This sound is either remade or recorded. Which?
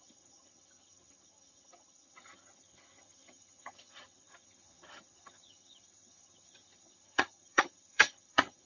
remade